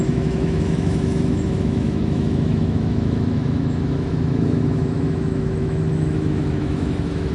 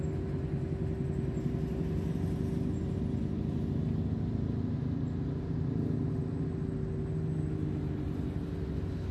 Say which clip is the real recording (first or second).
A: second